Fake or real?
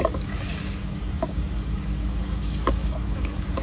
fake